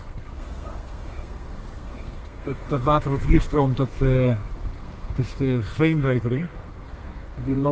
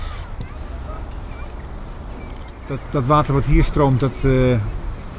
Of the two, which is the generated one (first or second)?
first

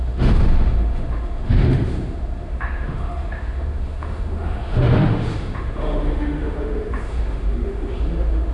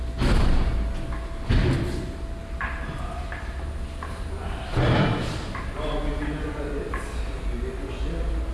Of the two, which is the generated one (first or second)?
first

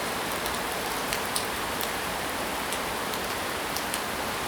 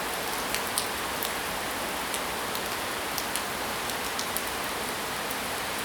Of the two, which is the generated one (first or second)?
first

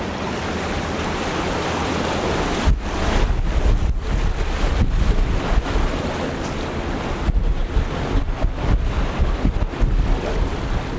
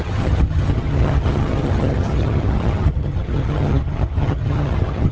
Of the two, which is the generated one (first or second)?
second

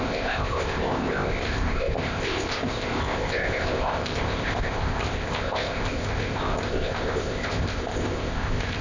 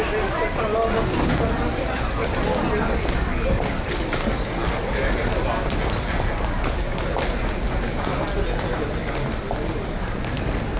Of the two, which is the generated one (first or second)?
first